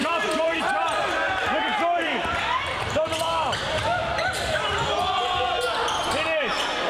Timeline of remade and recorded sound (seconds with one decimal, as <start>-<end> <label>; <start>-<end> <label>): 0.0-0.6 remade; 0.6-1.7 recorded; 1.7-4.8 remade; 4.8-6.9 recorded